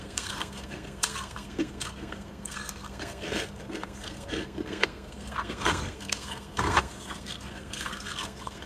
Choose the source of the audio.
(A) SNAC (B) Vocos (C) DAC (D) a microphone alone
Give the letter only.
A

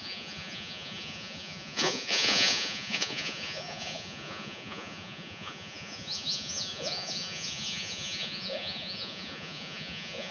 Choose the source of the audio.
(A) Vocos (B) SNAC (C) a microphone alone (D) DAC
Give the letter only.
A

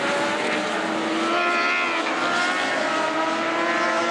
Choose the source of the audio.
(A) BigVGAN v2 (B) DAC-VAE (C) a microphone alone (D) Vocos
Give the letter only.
C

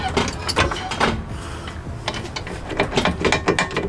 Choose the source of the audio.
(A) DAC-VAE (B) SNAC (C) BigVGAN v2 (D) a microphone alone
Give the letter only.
D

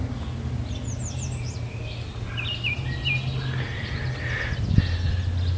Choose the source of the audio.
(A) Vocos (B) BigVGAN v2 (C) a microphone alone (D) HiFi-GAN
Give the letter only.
C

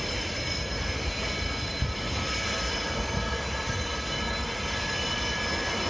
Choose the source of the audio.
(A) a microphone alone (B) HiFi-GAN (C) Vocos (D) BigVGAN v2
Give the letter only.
A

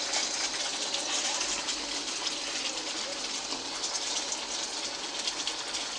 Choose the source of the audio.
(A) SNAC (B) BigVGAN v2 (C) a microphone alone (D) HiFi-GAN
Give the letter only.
C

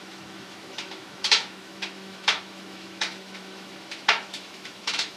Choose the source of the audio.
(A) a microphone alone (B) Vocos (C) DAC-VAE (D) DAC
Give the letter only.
C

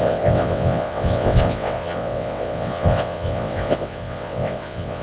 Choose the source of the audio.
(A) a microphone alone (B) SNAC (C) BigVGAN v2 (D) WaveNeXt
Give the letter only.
D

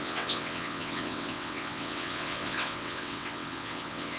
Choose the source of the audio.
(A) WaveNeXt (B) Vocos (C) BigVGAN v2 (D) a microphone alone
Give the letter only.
A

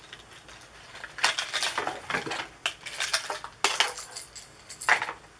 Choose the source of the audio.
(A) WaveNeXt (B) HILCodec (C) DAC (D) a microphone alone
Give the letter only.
D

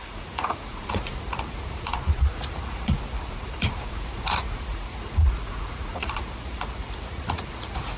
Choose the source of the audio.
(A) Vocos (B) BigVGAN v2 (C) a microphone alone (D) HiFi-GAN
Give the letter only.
A